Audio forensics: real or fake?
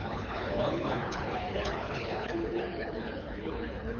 fake